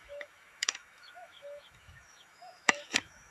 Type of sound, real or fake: fake